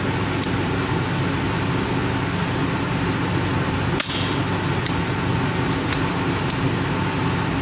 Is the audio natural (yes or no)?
yes